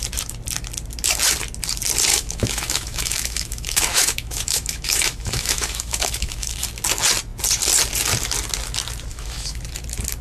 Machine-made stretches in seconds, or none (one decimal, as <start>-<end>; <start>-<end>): 2.1-6.6; 9.1-9.6